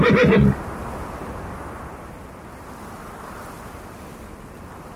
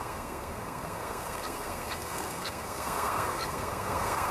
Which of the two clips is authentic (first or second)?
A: first